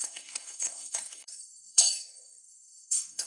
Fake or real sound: fake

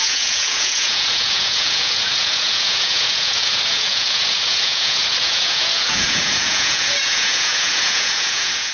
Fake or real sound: fake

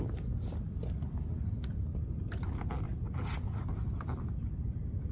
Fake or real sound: real